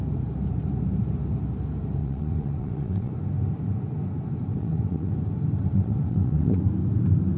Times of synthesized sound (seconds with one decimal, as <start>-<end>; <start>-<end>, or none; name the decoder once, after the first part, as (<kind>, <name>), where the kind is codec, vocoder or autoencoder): 2.0-3.1 (vocoder, WaveNeXt); 4.6-5.1; 5.7-6.6